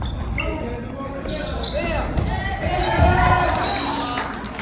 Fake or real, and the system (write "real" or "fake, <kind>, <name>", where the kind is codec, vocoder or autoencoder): real